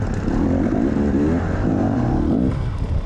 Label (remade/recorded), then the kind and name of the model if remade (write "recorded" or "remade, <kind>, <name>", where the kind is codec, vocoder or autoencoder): recorded